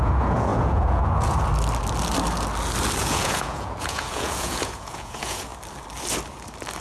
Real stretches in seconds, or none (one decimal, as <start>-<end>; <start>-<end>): 1.5-3.0; 5.5-6.8